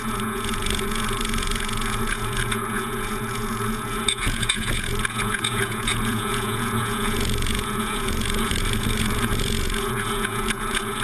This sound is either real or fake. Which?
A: fake